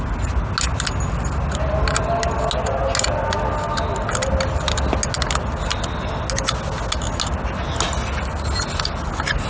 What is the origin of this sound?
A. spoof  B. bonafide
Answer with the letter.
B